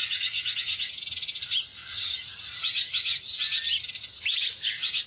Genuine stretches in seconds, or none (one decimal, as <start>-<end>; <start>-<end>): 0.0-5.1